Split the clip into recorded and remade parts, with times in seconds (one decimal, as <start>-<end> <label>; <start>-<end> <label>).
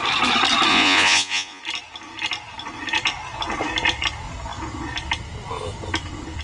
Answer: 0.0-0.7 recorded; 0.7-1.6 remade; 1.6-6.4 recorded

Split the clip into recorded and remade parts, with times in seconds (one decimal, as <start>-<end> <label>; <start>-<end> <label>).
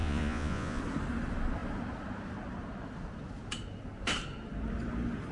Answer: 0.0-0.8 remade; 0.8-5.3 recorded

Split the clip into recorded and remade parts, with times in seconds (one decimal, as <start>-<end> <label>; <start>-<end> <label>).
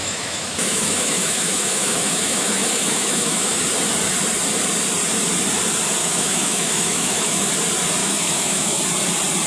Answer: 0.0-3.6 remade; 3.6-6.0 recorded; 6.0-7.5 remade; 7.5-8.0 recorded; 8.0-8.8 remade; 8.8-9.5 recorded